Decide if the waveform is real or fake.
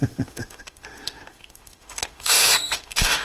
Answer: fake